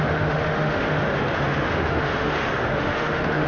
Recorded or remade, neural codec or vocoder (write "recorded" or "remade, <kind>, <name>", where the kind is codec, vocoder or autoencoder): remade, autoencoder, DAC-VAE